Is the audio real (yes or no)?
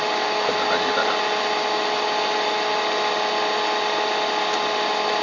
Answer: yes